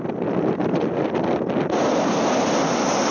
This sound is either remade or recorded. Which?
recorded